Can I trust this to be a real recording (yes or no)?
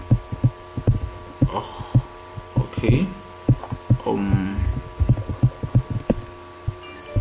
yes